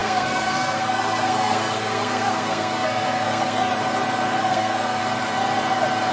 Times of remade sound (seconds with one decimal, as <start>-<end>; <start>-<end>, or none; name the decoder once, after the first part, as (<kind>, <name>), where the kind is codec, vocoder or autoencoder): 0.0-3.7 (codec, SNAC); 4.4-5.0

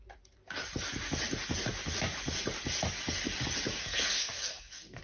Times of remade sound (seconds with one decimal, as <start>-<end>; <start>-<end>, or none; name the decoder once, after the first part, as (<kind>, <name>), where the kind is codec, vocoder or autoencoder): 3.8-5.0 (codec, SNAC)

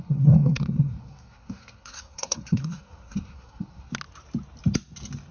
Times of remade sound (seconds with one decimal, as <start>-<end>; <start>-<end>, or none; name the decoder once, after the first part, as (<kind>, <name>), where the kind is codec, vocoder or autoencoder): 0.0-3.9 (codec, SNAC)

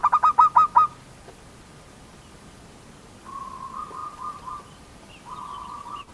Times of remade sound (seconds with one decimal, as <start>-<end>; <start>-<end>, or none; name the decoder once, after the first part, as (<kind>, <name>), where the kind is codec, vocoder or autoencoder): none

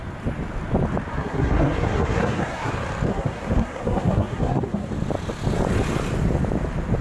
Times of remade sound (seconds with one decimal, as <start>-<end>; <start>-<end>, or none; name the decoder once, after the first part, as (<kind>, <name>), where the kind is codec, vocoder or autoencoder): 1.1-2.7 (codec, SNAC); 3.1-4.9

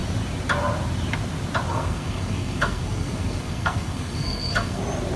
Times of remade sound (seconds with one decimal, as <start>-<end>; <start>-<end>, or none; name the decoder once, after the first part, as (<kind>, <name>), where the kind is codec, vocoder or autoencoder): 1.7-4.8 (codec, SNAC)